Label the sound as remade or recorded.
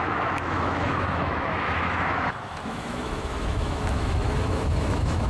remade